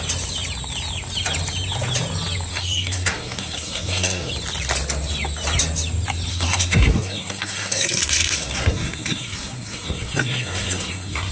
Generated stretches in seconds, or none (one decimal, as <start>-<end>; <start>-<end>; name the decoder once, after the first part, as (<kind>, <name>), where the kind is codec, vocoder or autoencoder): 2.5-4.3 (codec, SNAC); 6.3-11.3